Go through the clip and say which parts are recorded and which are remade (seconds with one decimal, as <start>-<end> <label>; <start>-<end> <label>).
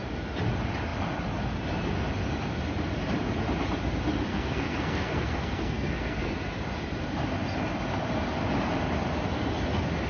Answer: 0.0-4.3 recorded; 4.3-6.3 remade; 6.3-10.1 recorded